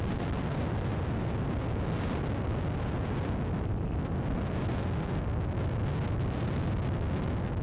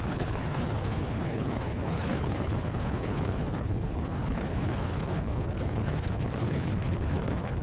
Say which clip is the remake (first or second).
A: second